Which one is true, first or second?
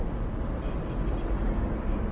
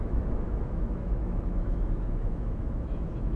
first